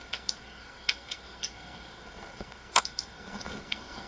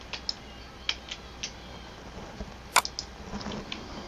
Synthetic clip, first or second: first